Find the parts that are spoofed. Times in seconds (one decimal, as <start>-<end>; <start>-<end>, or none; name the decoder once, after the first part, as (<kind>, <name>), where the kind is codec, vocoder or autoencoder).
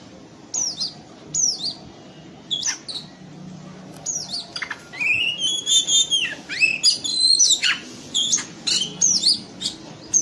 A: 7.1-8.7 (vocoder, Vocos)